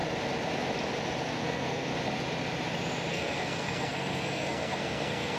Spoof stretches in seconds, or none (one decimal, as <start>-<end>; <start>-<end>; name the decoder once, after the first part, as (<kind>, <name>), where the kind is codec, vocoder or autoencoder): 1.2-1.9 (codec, SNAC); 3.1-5.4